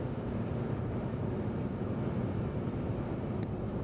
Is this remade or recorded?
recorded